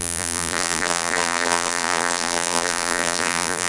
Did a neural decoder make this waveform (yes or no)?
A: yes